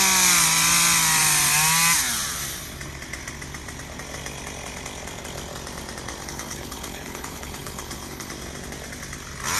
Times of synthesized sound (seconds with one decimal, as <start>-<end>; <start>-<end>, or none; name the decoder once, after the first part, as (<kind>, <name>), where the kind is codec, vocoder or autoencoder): 6.2-8.3 (codec, HILCodec)